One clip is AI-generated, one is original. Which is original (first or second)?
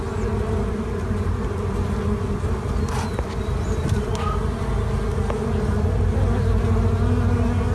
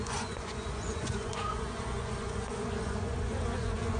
first